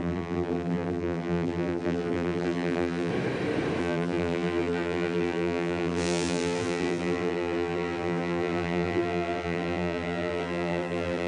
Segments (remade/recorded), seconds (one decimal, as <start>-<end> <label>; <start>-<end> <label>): 0.0-3.1 remade; 3.1-3.8 recorded; 3.8-11.3 remade